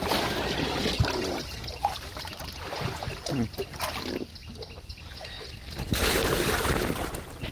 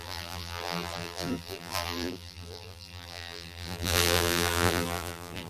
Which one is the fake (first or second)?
second